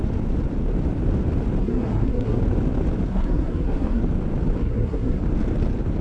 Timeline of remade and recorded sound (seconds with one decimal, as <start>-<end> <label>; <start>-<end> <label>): 0.0-1.6 recorded; 1.6-2.4 remade; 2.4-3.1 recorded; 3.1-4.0 remade; 4.0-4.6 recorded; 4.6-5.2 remade; 5.2-6.0 recorded